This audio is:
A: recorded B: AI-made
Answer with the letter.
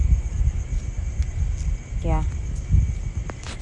A